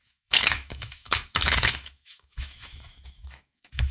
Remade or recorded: remade